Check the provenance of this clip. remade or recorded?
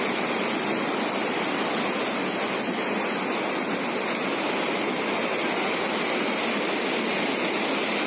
recorded